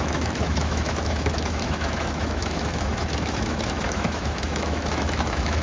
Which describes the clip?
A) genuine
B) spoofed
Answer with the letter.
B